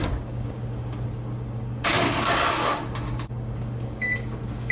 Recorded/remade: remade